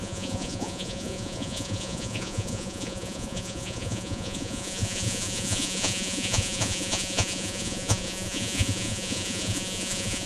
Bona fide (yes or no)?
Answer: no